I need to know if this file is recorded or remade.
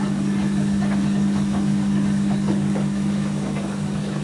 remade